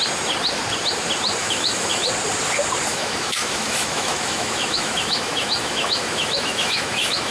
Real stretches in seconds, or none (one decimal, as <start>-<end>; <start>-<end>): 0.0-1.4; 2.0-2.9